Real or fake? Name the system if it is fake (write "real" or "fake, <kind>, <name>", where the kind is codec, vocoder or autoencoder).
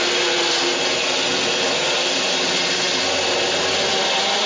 real